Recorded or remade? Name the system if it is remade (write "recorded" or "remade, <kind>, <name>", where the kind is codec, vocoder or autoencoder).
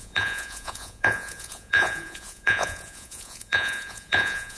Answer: remade, vocoder, Vocos